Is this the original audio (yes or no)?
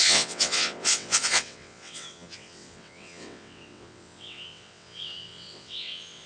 no